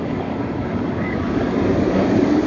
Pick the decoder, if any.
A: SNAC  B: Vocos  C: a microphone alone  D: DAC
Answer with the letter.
D